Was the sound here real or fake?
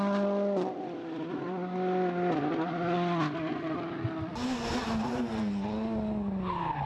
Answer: real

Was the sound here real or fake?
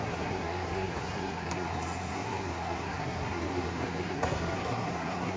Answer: fake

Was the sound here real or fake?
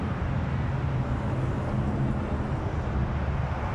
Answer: real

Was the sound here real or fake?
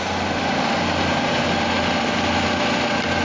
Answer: real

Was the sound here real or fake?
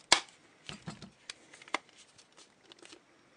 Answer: real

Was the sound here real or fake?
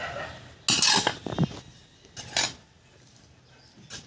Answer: real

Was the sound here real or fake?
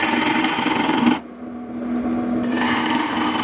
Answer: real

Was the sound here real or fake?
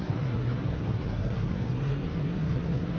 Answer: fake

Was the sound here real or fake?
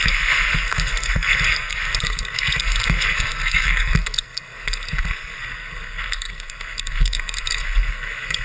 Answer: fake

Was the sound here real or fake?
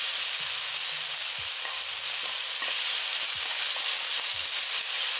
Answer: real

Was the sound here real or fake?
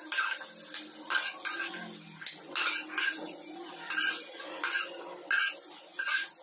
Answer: real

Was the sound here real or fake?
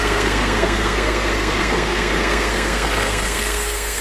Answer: fake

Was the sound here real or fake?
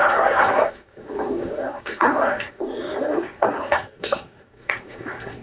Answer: fake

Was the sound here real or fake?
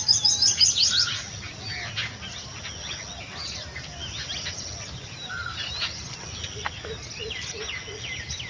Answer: real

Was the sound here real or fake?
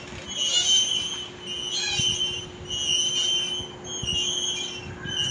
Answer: real